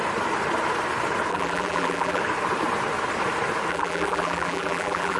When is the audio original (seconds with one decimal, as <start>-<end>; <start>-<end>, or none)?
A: 0.0-1.3; 2.2-3.7